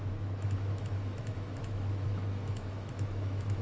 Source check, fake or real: fake